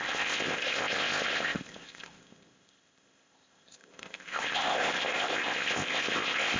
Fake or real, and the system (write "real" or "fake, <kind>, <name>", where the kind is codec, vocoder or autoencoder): fake, codec, ZipCodec